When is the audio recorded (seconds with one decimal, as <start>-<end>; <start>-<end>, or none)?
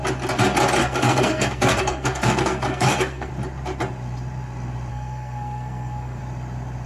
0.0-0.8; 3.3-4.9; 6.2-6.9